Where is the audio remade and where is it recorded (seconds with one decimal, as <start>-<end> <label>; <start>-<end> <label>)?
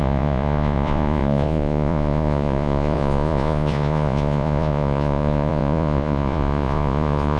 0.0-7.4 remade